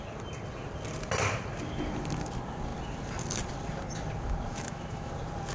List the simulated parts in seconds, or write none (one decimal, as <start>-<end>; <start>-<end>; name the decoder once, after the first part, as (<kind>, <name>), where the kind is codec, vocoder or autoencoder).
4.5-5.1 (autoencoder, DAC-VAE)